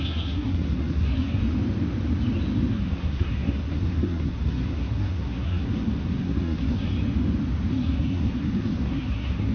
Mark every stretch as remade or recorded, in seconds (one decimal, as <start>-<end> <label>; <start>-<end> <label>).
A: 0.0-1.4 remade; 1.4-2.7 recorded; 2.7-6.9 remade; 6.9-7.7 recorded; 7.7-9.5 remade